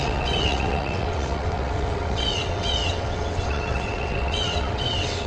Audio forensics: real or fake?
fake